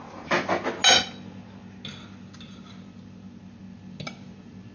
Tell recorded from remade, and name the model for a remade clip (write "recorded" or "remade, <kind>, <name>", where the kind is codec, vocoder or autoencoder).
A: recorded